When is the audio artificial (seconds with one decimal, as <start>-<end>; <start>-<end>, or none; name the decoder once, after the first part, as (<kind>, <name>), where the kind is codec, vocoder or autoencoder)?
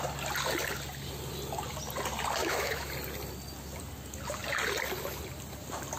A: 2.4-2.9 (autoencoder, DAC-VAE)